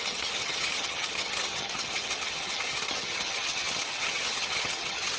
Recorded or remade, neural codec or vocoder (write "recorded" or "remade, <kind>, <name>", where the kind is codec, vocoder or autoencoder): remade, vocoder, HiFi-GAN